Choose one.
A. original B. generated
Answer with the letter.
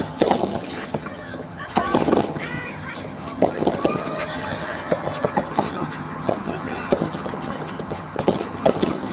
B